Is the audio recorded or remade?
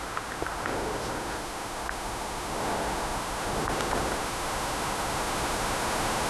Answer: remade